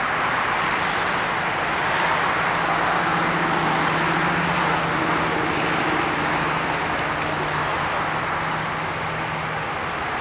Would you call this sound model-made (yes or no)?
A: no